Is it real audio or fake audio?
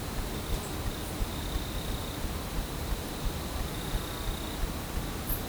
real